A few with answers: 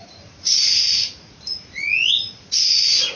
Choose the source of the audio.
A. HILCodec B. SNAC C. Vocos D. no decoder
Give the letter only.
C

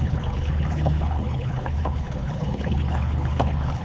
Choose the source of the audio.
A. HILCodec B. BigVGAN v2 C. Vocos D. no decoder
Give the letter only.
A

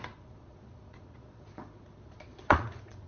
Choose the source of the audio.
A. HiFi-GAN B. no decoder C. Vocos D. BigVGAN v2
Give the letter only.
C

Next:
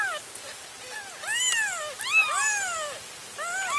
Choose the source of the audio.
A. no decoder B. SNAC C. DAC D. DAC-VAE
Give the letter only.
A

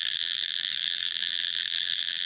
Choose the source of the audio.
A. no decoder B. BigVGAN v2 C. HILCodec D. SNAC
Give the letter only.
B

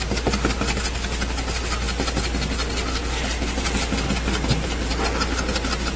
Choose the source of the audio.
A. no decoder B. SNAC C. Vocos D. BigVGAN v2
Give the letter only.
A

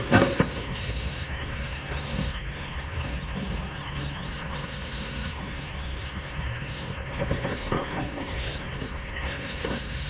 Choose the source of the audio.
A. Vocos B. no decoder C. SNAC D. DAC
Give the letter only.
C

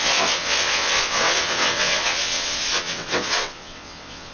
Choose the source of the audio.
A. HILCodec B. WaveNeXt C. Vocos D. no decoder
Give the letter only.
B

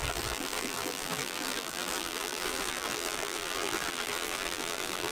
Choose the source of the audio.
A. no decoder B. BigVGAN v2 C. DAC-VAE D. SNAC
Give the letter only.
B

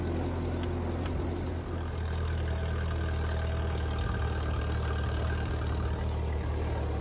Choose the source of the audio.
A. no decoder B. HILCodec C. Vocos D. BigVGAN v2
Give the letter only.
A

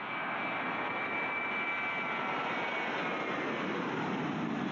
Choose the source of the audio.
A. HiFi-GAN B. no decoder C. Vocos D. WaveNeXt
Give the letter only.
B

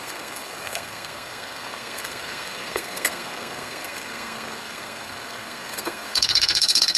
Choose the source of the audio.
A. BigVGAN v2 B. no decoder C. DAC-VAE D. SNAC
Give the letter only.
D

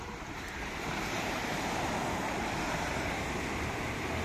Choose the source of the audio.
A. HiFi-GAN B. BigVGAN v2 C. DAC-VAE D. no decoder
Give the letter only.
B